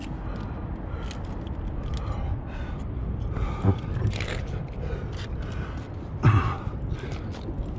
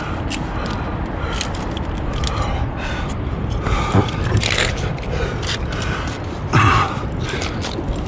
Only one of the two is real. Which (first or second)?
first